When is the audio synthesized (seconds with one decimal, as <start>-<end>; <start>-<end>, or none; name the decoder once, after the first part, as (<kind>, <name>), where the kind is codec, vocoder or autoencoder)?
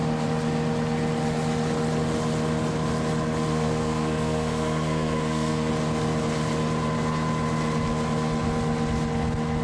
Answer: 3.5-5.7 (codec, SNAC)